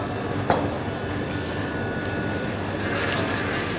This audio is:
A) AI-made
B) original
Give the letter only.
B